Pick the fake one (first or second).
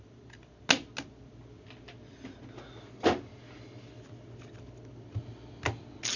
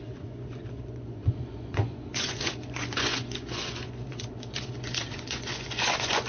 second